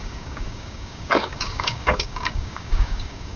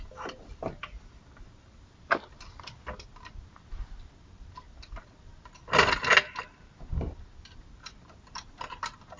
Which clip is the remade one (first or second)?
first